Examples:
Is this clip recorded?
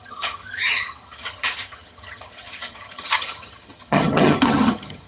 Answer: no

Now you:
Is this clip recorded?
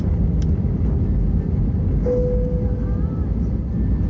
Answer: yes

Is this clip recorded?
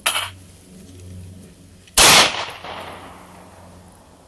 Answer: yes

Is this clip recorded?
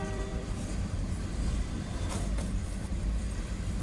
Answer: no